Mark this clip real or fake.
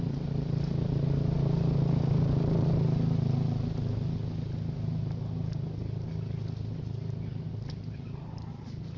real